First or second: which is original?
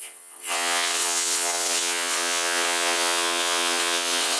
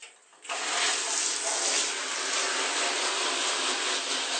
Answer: second